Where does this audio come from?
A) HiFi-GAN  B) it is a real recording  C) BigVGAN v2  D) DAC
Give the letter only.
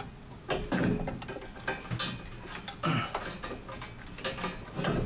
B